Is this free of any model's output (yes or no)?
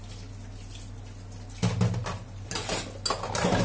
yes